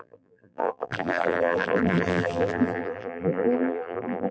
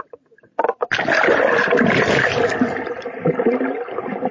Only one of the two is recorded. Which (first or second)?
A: second